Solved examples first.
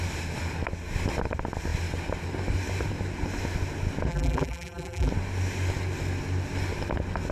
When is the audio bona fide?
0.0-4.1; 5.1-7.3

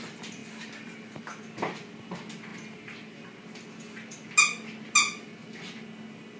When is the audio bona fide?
0.0-6.4

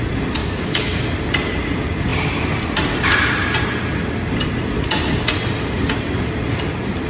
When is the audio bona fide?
0.0-0.4; 1.0-7.1

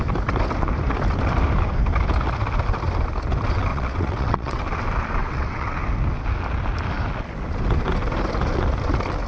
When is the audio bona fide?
0.0-3.7; 4.6-5.2; 5.8-9.3

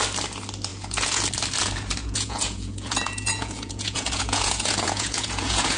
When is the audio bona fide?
0.0-0.7; 1.2-2.0

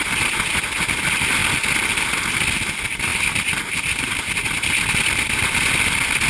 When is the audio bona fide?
0.0-3.1; 4.2-6.3

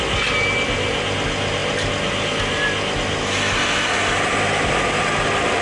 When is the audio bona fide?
0.0-5.6